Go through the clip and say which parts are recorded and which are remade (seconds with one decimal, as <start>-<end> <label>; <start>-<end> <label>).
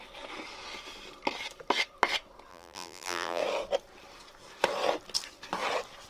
0.0-2.5 recorded; 2.5-3.4 remade; 3.4-6.1 recorded